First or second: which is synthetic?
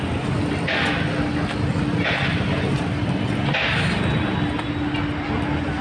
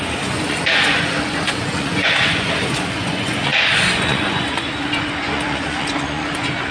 second